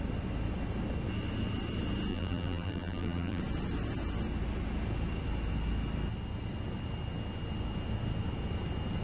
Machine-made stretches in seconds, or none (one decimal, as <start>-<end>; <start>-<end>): 2.1-3.4